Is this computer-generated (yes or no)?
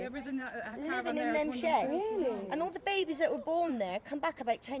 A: yes